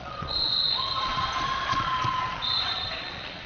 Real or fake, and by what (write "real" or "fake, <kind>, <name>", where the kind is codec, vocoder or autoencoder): fake, vocoder, Vocos